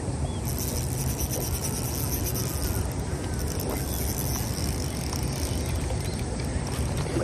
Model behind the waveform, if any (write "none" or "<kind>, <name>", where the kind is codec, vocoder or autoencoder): none